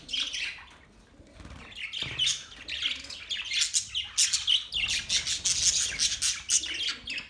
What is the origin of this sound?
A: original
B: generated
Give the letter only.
A